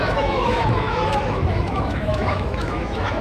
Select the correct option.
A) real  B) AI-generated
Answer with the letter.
B